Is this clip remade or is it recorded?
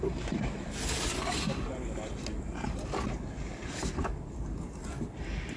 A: recorded